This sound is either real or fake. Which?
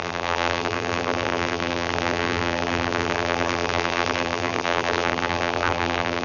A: fake